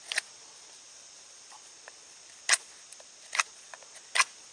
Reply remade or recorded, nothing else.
recorded